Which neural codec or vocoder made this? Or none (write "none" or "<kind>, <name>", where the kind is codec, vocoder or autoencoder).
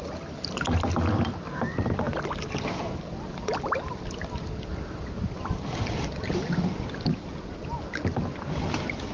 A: none